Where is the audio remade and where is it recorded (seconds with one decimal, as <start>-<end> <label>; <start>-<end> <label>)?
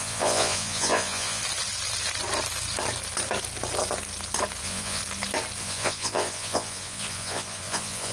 0.0-1.4 remade; 1.4-4.6 recorded; 4.6-5.0 remade; 5.0-5.6 recorded; 5.6-8.1 remade